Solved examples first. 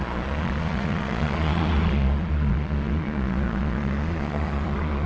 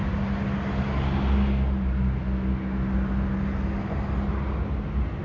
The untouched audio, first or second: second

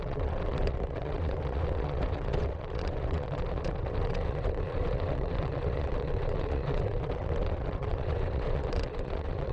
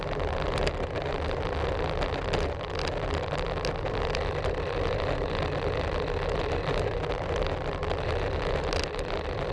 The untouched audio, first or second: second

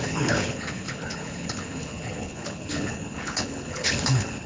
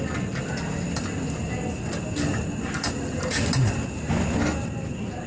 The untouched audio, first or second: second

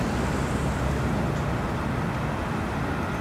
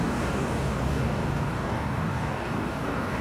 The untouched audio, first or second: first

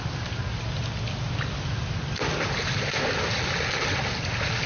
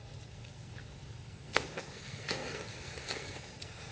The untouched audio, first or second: first